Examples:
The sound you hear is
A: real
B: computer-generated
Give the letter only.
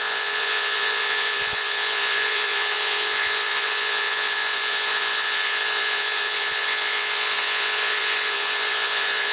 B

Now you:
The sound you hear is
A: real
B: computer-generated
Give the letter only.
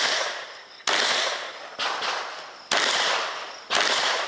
A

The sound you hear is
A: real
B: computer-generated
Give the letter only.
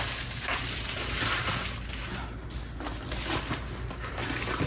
A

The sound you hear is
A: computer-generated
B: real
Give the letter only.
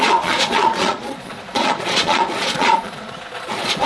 A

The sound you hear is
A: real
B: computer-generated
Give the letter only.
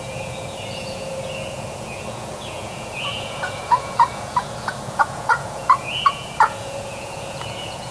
B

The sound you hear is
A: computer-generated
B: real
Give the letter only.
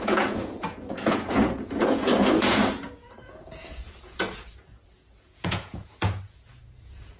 A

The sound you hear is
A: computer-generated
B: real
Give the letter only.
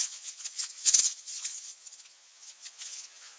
A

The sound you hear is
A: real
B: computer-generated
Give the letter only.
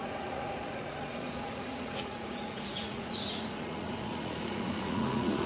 B